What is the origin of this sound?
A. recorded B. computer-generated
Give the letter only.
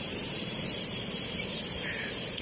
B